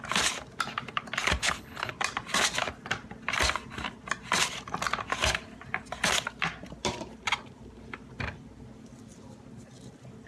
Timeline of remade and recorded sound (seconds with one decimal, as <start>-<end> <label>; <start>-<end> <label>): 0.0-1.4 recorded; 1.4-1.9 remade; 1.9-10.3 recorded